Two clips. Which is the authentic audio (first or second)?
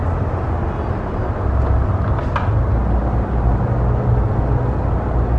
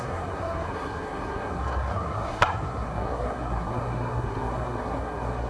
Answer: first